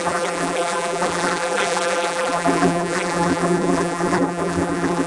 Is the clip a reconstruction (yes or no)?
yes